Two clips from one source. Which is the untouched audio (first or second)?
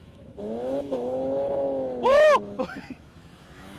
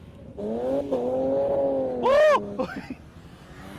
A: second